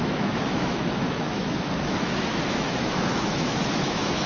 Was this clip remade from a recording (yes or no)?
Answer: yes